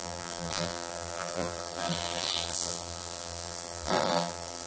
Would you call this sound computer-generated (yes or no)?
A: yes